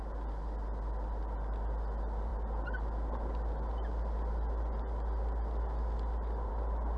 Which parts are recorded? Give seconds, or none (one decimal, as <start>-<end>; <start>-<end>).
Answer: 0.0-7.0